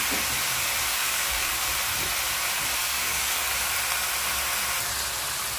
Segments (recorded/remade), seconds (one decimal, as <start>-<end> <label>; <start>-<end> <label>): 0.0-0.8 recorded; 0.8-1.7 remade; 1.7-2.8 recorded; 2.8-3.4 remade; 3.4-5.6 recorded